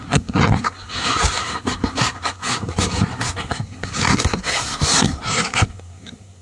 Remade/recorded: remade